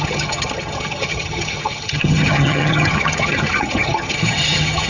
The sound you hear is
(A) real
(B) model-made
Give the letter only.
B